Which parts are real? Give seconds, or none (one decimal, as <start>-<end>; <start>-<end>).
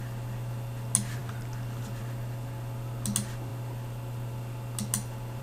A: 0.0-5.4